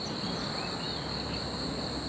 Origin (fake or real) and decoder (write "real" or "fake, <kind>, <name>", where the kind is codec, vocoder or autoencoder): real